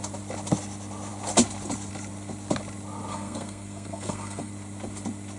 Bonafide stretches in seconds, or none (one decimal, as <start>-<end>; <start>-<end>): 0.0-3.1; 4.5-5.4